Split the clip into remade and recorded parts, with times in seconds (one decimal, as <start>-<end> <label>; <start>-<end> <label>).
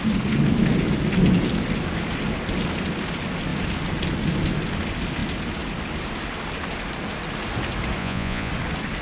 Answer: 0.0-8.0 recorded; 8.0-8.5 remade; 8.5-9.0 recorded